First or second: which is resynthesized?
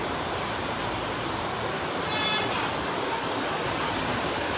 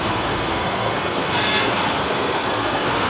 second